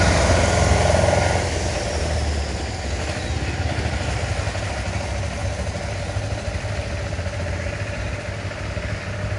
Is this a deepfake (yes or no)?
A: no